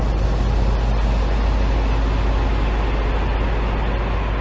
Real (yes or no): yes